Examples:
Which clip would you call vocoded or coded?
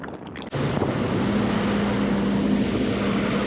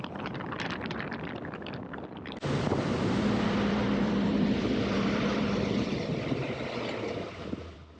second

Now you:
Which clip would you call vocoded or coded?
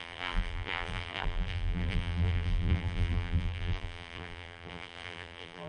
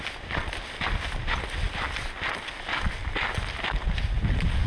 first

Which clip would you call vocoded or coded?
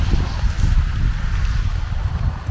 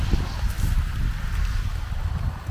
first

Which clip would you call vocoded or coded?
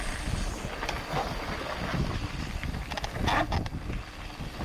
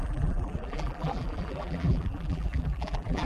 second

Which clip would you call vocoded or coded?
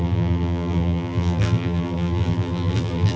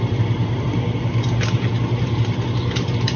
first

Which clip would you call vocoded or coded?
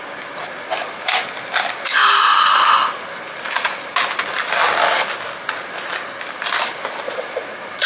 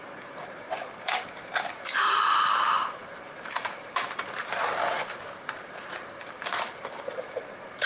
second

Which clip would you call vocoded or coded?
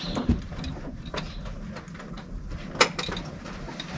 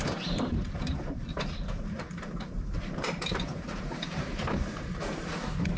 second